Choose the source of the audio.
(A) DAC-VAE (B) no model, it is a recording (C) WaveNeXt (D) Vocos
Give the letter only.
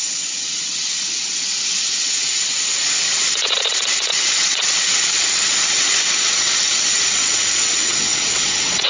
C